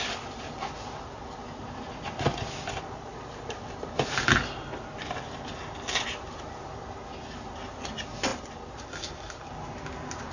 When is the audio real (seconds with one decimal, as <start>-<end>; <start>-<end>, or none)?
0.0-8.3; 9.5-10.3